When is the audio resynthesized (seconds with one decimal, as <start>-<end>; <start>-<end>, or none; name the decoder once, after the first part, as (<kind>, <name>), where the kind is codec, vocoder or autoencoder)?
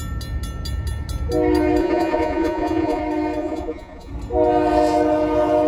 1.8-3.0 (vocoder, Vocos); 3.4-4.1